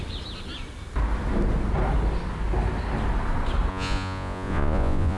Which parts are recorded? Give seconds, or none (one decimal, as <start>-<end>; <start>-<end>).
0.0-3.7